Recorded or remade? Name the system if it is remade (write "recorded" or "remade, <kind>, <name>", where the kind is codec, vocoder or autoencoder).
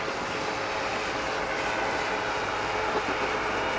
recorded